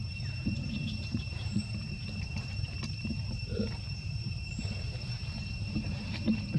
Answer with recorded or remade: remade